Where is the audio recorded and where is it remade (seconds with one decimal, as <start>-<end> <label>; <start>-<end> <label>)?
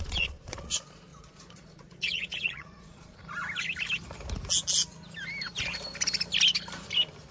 0.0-3.2 remade; 3.2-7.3 recorded